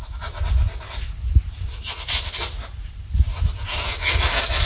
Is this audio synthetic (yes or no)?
no